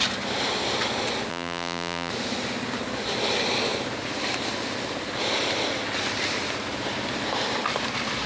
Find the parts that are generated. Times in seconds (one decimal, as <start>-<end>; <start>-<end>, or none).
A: 1.3-2.1